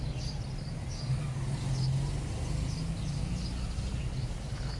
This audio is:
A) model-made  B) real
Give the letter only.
B